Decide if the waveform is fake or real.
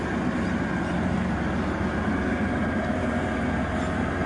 real